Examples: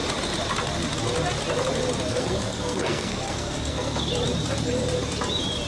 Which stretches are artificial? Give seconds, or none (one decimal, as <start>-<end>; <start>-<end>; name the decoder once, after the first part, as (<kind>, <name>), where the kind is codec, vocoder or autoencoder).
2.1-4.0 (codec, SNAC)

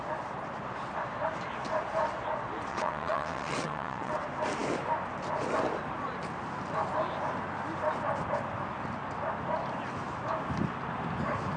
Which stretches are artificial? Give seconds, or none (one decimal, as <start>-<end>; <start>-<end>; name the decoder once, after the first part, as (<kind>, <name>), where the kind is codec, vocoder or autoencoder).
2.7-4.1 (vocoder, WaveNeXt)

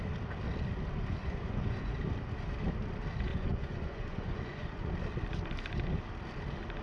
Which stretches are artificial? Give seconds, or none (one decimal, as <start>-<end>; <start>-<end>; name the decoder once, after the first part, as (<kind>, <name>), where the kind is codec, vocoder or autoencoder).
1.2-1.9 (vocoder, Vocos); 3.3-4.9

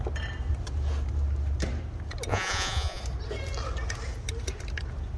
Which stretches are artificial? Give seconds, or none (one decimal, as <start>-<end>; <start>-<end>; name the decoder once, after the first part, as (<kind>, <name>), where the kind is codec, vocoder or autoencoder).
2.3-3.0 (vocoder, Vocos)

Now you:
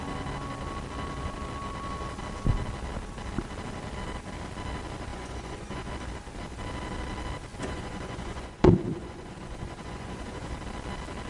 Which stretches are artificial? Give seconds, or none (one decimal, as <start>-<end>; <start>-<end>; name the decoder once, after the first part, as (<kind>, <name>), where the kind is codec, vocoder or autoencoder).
5.1-5.9 (vocoder, Vocos); 7.5-10.5

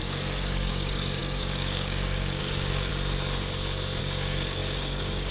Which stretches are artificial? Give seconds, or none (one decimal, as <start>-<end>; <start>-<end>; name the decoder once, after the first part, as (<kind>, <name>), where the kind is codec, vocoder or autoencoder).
0.0-2.9 (codec, DAC); 4.0-5.3